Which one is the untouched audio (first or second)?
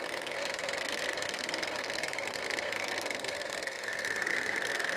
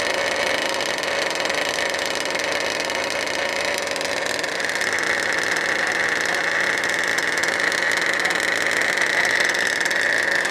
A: second